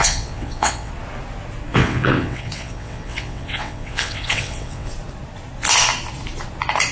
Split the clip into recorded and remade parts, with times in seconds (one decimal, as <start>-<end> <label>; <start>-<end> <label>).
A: 0.0-0.9 remade; 0.9-1.7 recorded; 1.7-4.9 remade; 4.9-6.9 recorded